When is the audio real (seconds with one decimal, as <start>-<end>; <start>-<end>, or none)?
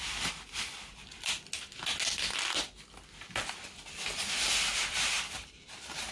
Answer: 1.0-4.5